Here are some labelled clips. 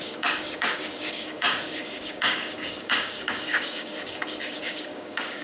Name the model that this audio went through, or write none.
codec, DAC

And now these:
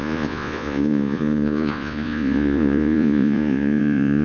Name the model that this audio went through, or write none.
vocoder, Vocos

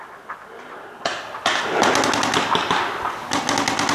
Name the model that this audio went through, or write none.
none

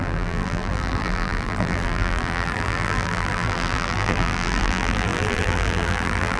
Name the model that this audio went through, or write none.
vocoder, BigVGAN v2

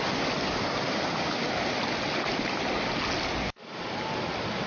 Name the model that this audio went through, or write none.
none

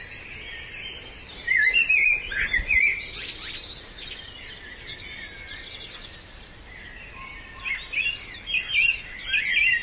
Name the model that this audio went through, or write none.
none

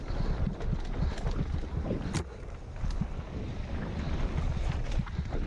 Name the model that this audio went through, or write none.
none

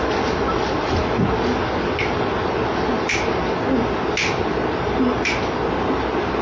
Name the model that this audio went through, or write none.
none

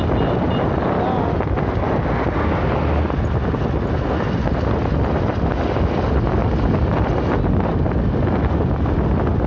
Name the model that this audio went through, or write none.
none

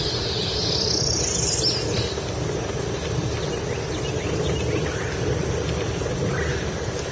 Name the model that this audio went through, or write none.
none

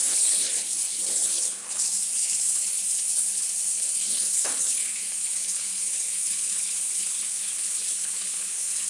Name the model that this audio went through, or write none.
codec, HILCodec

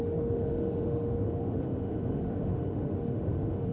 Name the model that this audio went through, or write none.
autoencoder, DAC-VAE